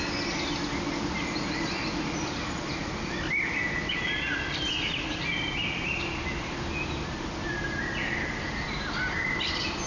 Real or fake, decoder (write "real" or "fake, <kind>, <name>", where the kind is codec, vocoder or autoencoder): real